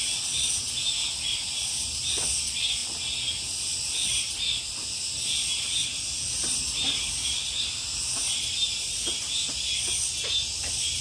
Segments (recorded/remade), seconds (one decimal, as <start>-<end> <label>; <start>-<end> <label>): 0.0-11.0 recorded